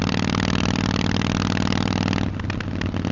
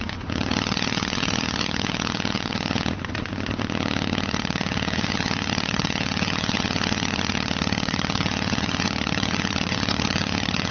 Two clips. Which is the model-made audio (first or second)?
second